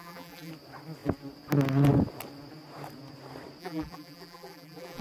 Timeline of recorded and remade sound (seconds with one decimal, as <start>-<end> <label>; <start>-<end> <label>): 0.0-0.5 remade; 0.5-3.6 recorded; 3.6-5.0 remade